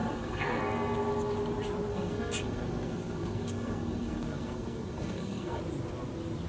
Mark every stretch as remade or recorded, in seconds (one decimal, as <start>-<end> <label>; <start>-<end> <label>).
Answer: 0.0-0.6 remade; 0.6-1.9 recorded; 1.9-5.6 remade; 5.6-6.5 recorded